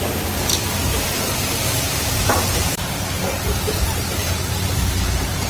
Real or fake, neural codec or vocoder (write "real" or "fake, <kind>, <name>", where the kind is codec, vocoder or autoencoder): fake, vocoder, BigVGAN v2